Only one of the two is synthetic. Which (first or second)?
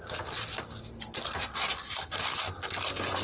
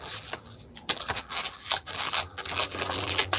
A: second